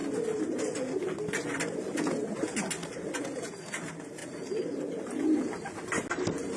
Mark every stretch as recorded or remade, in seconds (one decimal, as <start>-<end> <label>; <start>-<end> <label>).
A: 0.0-6.6 recorded

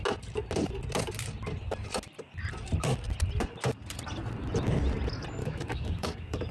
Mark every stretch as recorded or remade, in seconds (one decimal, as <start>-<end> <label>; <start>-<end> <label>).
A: 0.0-5.4 recorded; 5.4-6.5 remade